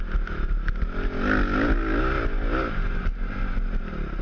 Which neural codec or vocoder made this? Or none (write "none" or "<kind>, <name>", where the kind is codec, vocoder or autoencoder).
none